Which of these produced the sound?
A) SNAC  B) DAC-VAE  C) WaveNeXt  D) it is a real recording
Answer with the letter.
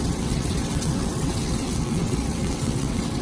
C